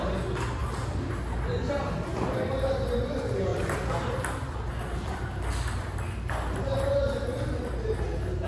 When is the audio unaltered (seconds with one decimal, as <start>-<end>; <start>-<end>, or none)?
0.0-8.5